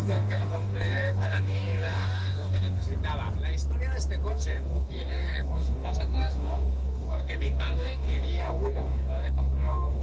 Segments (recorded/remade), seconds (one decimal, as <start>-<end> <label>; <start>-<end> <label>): 0.0-2.9 remade; 2.9-4.3 recorded; 4.3-10.0 remade